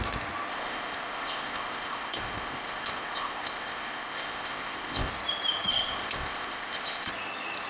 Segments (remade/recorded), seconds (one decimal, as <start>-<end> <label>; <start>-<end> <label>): 0.0-0.5 recorded; 0.5-5.1 remade; 5.1-5.7 recorded; 5.7-7.1 remade; 7.1-7.7 recorded